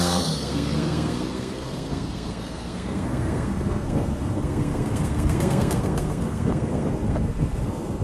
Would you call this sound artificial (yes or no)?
yes